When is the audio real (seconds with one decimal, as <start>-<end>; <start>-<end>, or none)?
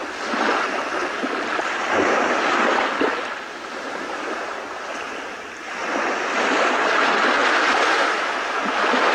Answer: 0.0-7.4; 8.7-9.1